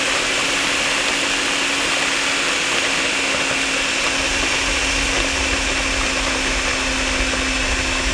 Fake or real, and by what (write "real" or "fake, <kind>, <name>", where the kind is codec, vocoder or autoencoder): real